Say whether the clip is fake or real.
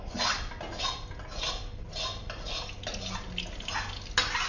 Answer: real